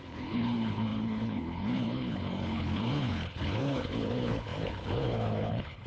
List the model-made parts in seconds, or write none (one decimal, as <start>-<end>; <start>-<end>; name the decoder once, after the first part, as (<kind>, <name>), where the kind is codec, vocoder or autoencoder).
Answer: 0.0-5.9 (codec, HILCodec)